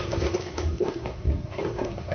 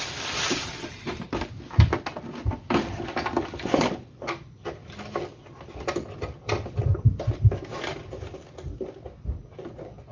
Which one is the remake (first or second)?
first